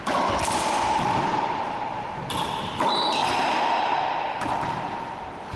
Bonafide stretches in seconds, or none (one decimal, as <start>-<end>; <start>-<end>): 0.0-3.2; 5.0-5.6

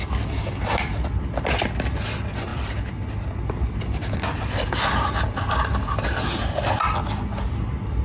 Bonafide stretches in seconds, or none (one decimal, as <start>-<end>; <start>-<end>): 0.0-2.5; 3.7-8.0

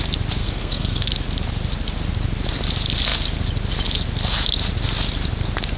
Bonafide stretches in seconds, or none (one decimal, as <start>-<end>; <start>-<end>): 0.0-0.4; 1.1-5.8

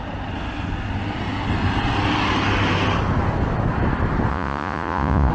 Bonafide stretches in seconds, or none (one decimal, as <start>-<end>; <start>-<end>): 0.0-4.3